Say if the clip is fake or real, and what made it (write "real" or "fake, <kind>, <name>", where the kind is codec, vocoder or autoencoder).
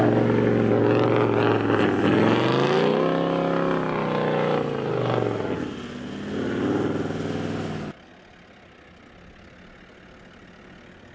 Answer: real